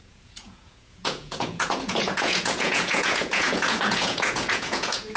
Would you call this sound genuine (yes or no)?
no